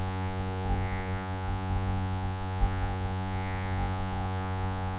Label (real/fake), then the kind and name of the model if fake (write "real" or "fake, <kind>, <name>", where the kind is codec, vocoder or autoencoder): fake, vocoder, Vocos